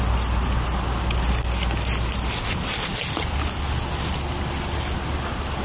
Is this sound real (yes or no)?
yes